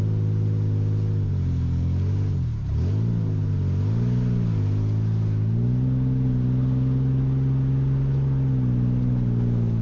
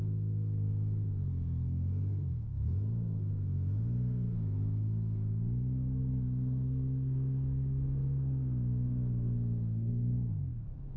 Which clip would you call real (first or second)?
first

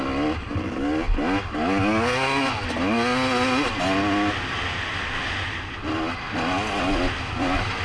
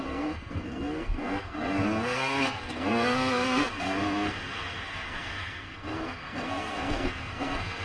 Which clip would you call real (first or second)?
first